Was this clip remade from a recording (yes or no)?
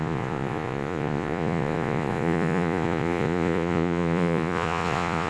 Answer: yes